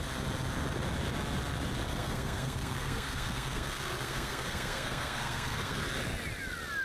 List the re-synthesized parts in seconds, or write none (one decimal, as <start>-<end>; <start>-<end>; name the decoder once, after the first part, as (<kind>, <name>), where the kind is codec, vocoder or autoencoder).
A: 1.9-5.8 (codec, SNAC)